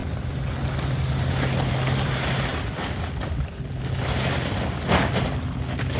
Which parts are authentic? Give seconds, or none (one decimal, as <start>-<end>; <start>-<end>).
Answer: 0.0-6.0